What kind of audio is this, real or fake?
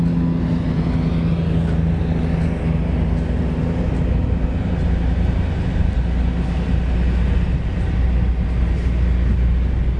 real